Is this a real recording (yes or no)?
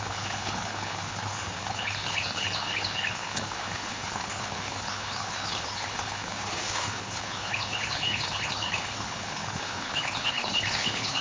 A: no